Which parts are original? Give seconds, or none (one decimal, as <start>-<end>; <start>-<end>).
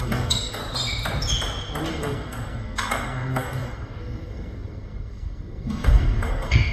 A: 0.6-1.9